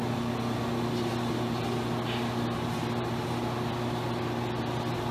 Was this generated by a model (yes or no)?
no